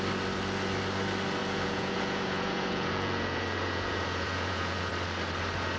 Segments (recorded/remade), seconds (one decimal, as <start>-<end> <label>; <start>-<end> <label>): 0.0-1.4 recorded; 1.4-4.9 remade; 4.9-5.8 recorded